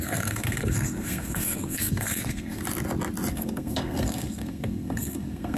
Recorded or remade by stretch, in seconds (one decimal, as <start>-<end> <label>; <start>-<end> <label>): 0.0-2.6 remade; 2.6-3.3 recorded; 3.3-5.6 remade